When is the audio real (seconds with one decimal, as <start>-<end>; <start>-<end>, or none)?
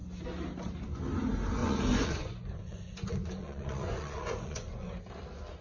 0.0-1.6; 5.0-5.6